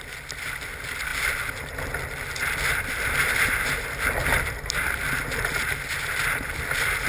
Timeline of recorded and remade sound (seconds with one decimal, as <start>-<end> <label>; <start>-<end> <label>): 0.0-7.1 recorded

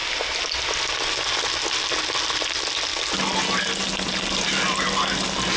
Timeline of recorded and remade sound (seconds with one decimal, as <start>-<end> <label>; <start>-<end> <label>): 0.0-5.6 recorded

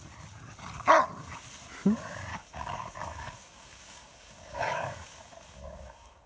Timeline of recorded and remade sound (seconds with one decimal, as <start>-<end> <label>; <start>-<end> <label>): 0.0-2.3 recorded; 2.3-6.3 remade

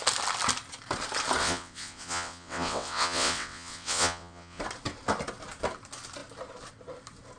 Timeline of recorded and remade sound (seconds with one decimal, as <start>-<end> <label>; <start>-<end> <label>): 0.0-1.4 recorded; 1.4-4.6 remade; 4.6-7.4 recorded

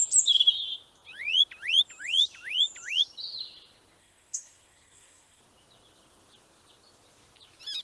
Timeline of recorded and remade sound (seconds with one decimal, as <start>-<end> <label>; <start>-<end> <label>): 0.0-4.0 recorded; 4.0-5.4 remade; 5.4-7.8 recorded

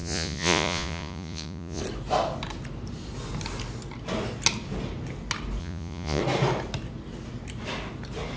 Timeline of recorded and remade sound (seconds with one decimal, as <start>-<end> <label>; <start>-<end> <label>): 0.0-1.8 remade; 1.8-5.6 recorded; 5.6-6.2 remade; 6.2-8.4 recorded

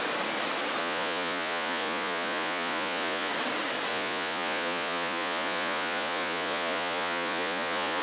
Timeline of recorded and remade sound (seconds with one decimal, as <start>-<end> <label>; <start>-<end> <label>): 0.0-0.8 recorded; 0.8-3.3 remade; 3.3-3.9 recorded; 3.9-8.0 remade